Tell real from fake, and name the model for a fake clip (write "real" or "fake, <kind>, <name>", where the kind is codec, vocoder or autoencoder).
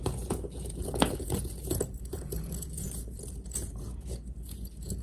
fake, vocoder, Vocos